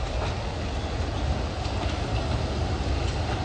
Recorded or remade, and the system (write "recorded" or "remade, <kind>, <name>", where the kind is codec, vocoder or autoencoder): recorded